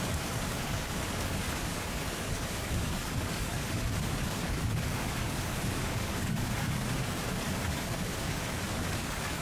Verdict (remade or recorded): remade